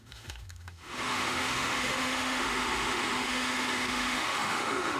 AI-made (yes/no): yes